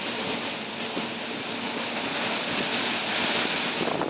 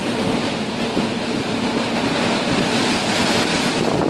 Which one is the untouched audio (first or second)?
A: first